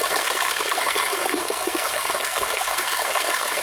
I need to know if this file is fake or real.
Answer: fake